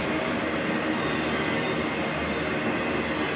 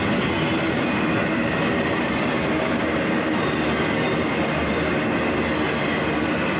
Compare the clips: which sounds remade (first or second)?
second